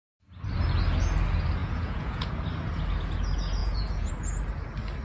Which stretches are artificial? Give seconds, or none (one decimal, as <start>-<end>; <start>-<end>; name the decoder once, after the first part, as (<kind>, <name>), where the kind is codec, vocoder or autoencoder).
1.6-2.3 (vocoder, Vocos); 3.6-4.1